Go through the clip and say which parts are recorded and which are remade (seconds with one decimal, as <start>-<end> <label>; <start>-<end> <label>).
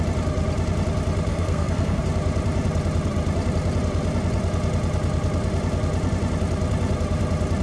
0.0-1.3 recorded; 1.3-2.0 remade; 2.0-7.6 recorded